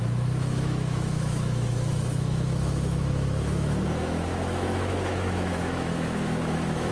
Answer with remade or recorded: remade